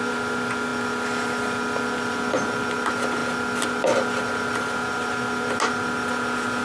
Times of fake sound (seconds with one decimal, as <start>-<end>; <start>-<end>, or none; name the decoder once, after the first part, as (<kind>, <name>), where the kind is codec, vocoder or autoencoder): none